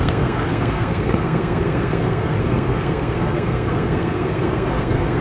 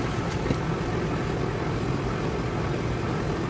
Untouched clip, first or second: second